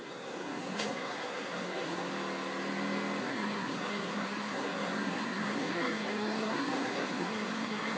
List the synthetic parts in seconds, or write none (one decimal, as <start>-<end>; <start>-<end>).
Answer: 0.0-2.1; 3.2-8.0